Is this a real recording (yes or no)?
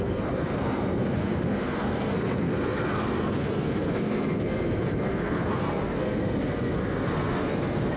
no